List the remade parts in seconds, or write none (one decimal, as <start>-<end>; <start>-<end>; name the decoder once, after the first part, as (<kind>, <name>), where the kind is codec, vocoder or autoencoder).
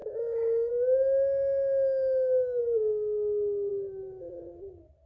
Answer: none